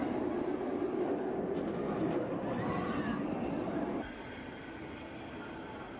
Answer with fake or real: real